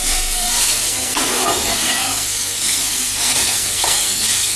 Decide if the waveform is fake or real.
fake